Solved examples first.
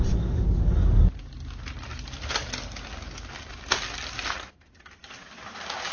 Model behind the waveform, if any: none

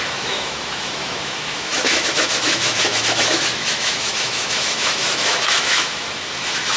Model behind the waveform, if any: autoencoder, DAC-VAE